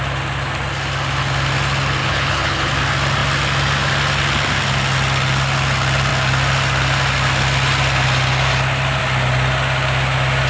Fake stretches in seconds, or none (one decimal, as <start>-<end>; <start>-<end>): 2.0-2.7